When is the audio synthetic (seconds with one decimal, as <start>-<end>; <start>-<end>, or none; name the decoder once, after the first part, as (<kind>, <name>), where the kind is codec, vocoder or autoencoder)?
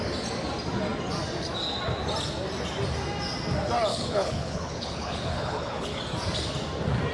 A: 3.9-6.0 (codec, HILCodec)